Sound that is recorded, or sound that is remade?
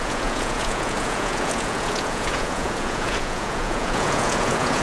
remade